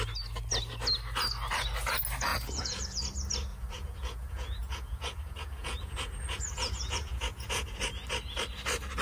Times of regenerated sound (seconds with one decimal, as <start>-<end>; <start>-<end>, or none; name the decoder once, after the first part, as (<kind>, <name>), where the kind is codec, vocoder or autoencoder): 2.3-3.0 (vocoder, Vocos); 3.5-7.8